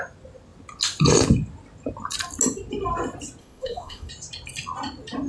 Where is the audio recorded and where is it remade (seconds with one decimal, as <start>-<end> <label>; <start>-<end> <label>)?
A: 0.0-3.4 recorded; 3.4-4.1 remade; 4.1-5.3 recorded